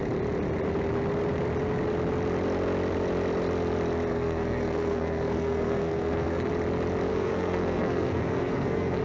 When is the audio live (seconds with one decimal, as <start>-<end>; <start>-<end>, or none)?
0.0-4.1; 6.5-7.1